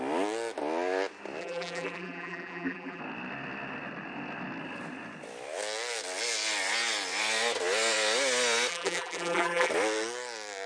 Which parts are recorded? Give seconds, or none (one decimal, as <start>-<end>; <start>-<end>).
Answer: 0.0-1.4; 3.0-8.7; 9.7-10.7